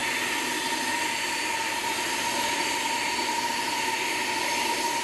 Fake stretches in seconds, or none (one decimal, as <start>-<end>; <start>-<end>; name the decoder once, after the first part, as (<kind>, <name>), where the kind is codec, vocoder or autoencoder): none